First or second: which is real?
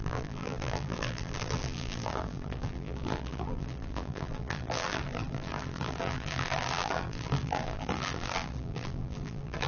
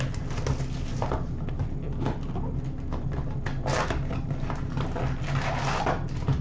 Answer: second